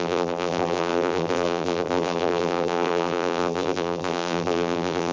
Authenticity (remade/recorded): remade